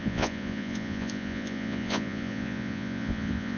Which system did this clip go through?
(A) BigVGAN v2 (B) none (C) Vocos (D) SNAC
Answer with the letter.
C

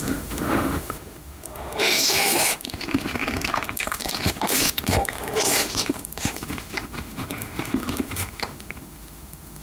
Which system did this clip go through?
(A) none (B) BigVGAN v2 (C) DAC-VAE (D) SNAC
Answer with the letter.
C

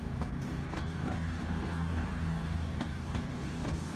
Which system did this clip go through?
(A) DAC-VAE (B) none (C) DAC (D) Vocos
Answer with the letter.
C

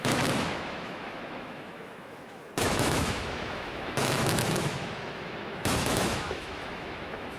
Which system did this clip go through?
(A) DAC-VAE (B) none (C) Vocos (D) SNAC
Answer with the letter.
A